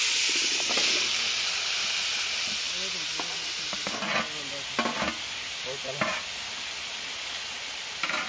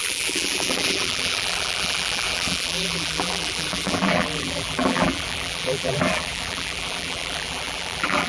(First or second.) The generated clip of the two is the second